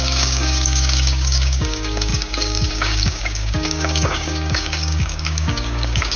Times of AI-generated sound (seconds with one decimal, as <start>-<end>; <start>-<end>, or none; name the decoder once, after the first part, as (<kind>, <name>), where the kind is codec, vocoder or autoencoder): 0.0-6.2 (codec, DAC)